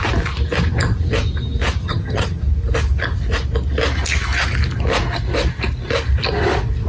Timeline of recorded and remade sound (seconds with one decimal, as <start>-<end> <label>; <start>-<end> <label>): 0.0-1.8 recorded; 1.8-2.4 remade; 2.4-6.9 recorded